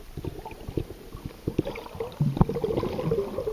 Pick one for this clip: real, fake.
real